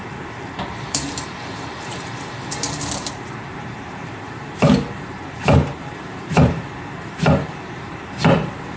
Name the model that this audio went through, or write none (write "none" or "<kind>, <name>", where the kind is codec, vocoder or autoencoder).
vocoder, BigVGAN v2